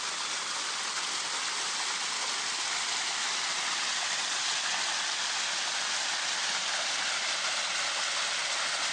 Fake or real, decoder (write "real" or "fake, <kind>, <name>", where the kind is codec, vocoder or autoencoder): real